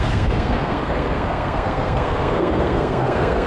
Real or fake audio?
fake